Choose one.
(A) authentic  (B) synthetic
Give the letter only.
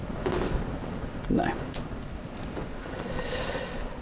A